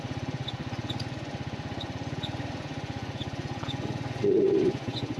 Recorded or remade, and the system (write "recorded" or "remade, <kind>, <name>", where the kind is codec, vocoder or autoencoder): remade, vocoder, Vocos